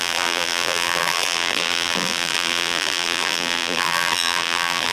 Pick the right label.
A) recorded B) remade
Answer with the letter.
B